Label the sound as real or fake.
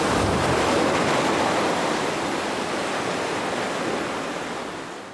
real